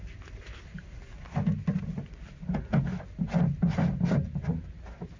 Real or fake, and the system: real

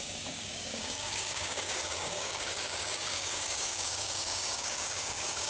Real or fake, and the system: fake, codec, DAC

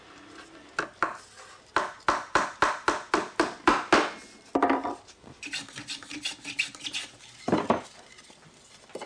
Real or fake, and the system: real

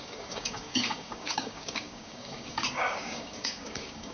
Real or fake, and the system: fake, codec, DAC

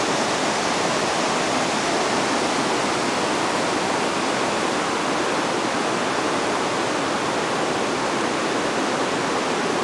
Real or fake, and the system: real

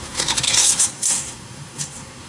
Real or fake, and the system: fake, codec, SNAC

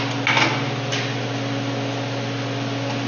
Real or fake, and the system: real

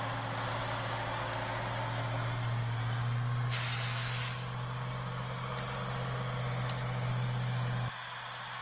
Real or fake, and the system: real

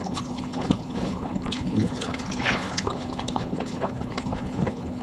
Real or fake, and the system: fake, codec, HILCodec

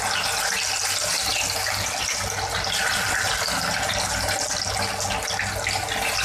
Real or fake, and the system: real